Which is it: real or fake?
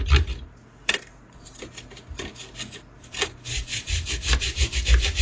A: real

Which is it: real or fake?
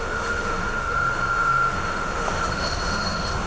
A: fake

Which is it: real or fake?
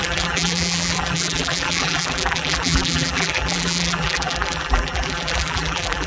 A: fake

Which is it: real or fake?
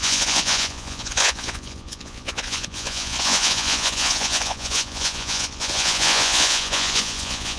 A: fake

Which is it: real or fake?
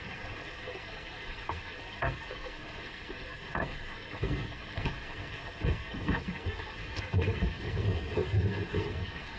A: fake